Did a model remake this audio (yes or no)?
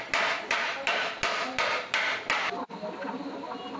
no